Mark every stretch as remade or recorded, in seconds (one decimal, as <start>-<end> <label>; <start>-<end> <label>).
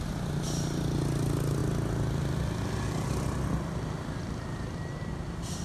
0.0-5.6 recorded